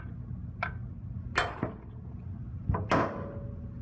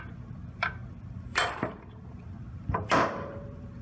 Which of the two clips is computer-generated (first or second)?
second